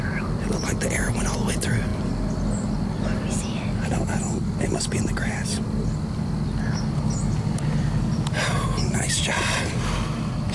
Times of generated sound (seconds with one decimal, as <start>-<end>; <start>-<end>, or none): none